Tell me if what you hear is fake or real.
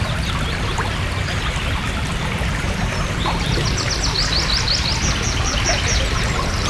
real